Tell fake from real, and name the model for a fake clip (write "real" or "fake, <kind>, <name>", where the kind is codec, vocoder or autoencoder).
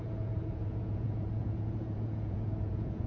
fake, vocoder, Vocos